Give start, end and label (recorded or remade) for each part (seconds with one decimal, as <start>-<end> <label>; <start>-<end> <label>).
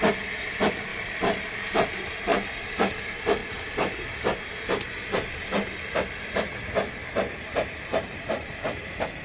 0.0-0.9 recorded; 0.9-1.4 remade; 1.4-2.3 recorded; 2.3-2.9 remade; 2.9-7.0 recorded; 7.0-9.2 remade